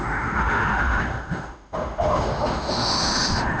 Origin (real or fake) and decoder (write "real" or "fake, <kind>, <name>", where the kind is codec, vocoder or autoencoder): fake, autoencoder, DAC-VAE